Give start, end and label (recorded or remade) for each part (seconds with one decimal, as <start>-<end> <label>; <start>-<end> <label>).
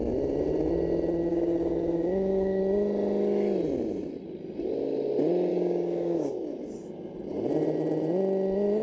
0.0-1.3 recorded; 1.3-2.6 remade; 2.6-5.5 recorded; 5.5-6.3 remade; 6.3-8.8 recorded